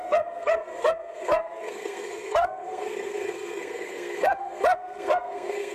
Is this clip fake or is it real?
fake